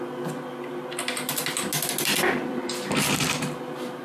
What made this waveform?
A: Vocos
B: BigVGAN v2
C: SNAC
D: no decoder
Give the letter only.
D